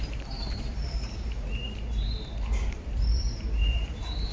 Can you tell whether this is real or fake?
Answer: fake